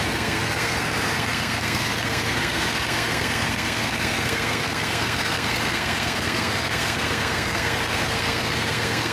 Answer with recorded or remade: remade